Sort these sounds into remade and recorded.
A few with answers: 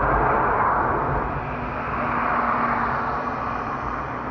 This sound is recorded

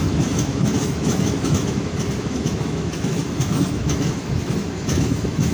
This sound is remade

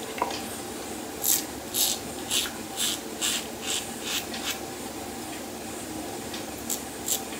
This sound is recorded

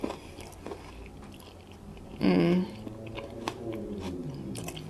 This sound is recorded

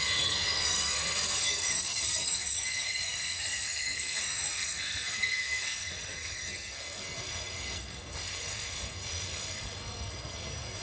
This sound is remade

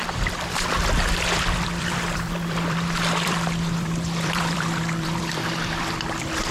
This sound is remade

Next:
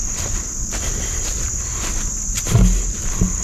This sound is recorded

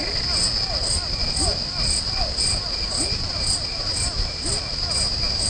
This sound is recorded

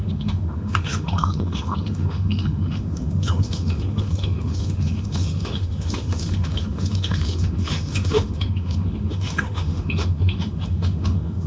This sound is remade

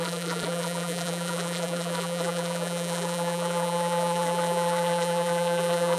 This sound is remade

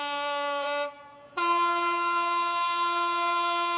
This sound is remade